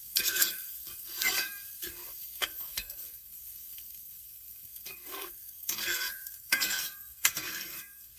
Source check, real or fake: fake